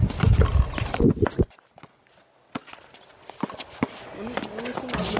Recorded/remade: recorded